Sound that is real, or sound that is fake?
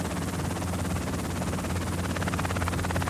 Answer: real